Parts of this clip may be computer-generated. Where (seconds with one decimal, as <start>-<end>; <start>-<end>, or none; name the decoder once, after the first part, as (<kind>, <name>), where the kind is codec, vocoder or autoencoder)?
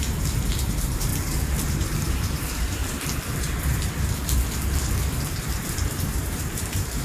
0.0-1.1 (vocoder, BigVGAN v2); 1.7-2.8; 5.4-7.0